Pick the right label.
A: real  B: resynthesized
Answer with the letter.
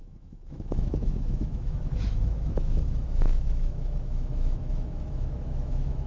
B